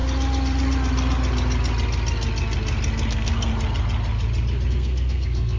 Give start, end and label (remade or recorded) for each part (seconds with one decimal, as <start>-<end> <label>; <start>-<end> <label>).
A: 0.0-3.1 recorded; 3.1-3.5 remade; 3.5-4.7 recorded; 4.7-5.6 remade